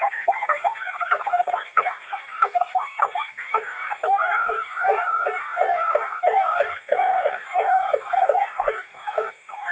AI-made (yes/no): yes